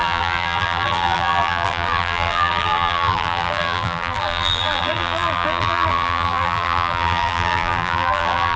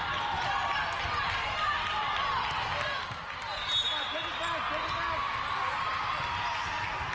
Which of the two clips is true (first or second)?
second